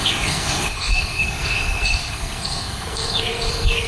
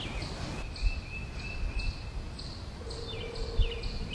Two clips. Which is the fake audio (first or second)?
first